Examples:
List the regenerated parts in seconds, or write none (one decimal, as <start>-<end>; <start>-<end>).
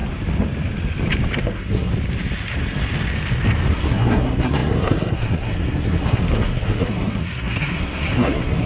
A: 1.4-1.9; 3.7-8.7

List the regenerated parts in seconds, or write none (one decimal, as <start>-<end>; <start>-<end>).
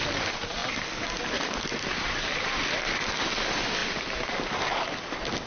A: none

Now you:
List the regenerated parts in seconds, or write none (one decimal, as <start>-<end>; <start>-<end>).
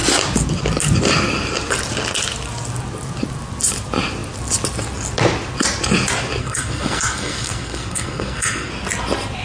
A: 6.4-8.7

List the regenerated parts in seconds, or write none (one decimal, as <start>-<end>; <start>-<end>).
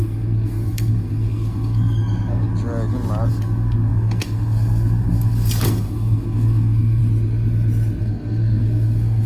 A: 0.0-2.5; 3.3-7.0; 8.0-9.3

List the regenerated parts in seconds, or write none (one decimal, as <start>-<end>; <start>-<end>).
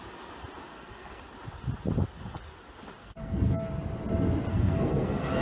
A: 0.7-1.2; 3.0-3.7; 4.5-5.4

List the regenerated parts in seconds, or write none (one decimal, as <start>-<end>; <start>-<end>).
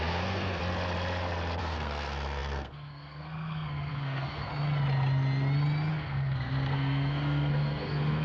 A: 0.0-0.6; 1.6-4.5; 5.9-8.2